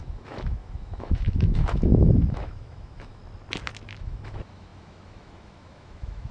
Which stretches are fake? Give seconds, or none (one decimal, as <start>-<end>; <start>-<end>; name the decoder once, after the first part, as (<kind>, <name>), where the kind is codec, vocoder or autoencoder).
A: 0.0-3.2 (autoencoder, DAC-VAE); 4.0-6.3